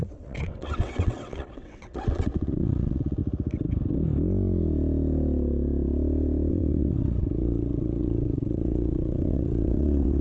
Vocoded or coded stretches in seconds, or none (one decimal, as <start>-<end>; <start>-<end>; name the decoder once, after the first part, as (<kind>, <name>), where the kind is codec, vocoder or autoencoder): 0.0-3.2 (vocoder, WaveNeXt); 6.5-10.2